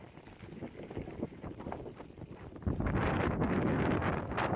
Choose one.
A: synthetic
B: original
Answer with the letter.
B